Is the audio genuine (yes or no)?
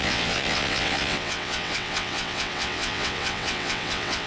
no